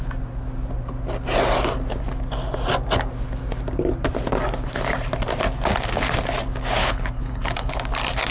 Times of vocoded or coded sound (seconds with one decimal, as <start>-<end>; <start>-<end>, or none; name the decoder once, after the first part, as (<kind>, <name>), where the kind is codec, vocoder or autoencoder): 6.8-7.7 (codec, HILCodec)